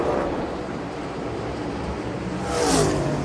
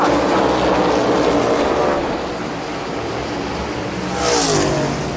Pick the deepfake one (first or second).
first